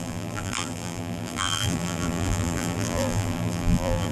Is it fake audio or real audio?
fake